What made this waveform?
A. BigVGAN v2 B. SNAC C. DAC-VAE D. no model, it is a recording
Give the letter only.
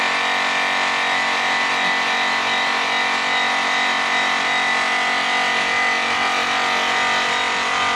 D